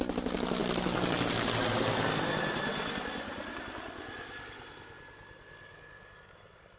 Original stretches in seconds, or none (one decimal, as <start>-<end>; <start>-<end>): 0.0-6.8

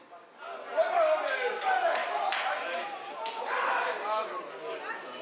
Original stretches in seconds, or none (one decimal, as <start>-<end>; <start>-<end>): 0.0-5.2

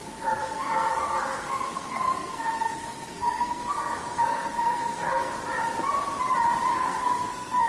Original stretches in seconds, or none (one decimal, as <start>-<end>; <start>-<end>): 5.3-6.7

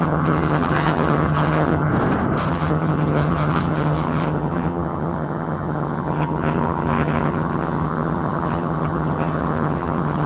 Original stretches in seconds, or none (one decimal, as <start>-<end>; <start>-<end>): 1.9-2.5

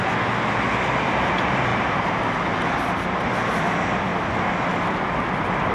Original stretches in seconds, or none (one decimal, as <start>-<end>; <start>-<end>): 0.0-1.7; 2.2-5.7

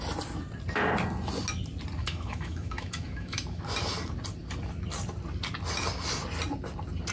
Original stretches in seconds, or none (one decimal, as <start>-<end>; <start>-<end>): 0.0-2.0; 3.6-7.1

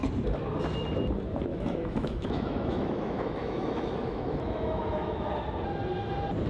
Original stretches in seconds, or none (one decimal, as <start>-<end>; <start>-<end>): 0.0-1.5; 5.3-6.5

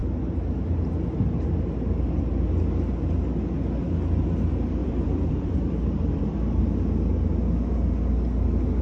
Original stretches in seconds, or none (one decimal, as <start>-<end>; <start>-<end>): 0.0-4.8; 6.6-8.8